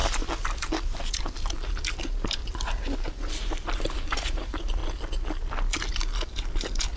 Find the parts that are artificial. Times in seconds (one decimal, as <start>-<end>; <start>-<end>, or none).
1.3-2.4; 3.3-4.8; 5.9-7.0